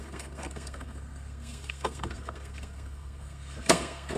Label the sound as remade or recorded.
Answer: remade